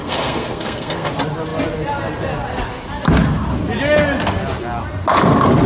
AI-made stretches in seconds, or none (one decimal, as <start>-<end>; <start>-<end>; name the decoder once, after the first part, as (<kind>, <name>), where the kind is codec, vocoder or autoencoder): 0.0-1.1 (codec, SNAC)